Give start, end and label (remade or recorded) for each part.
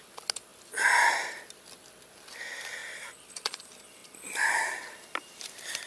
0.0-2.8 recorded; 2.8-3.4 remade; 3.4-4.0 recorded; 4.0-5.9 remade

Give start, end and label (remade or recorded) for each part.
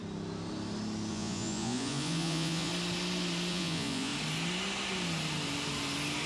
0.0-1.1 recorded; 1.1-2.7 remade; 2.7-3.5 recorded; 3.5-4.1 remade; 4.1-6.3 recorded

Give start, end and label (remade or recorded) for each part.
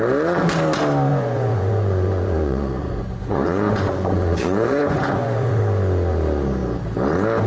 0.0-1.1 recorded; 1.1-5.6 remade; 5.6-7.5 recorded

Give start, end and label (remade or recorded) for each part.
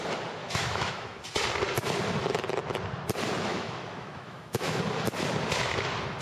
0.0-0.4 recorded; 0.4-1.2 remade; 1.2-3.5 recorded; 3.5-4.8 remade; 4.8-6.2 recorded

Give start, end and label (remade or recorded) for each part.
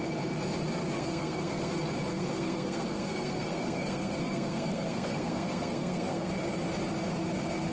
0.0-1.0 recorded; 1.0-1.7 remade; 1.7-2.1 recorded; 2.1-6.3 remade; 6.3-7.7 recorded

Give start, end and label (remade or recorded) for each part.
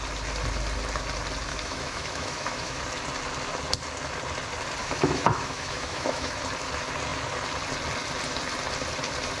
0.0-1.5 recorded; 1.5-2.8 remade; 2.8-4.8 recorded; 4.8-6.4 remade; 6.4-9.4 recorded